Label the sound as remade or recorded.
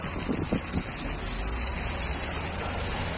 recorded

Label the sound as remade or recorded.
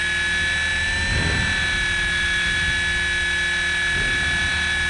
recorded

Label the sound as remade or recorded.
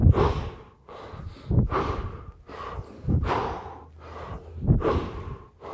recorded